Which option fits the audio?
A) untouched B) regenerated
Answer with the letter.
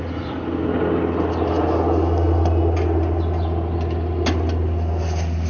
A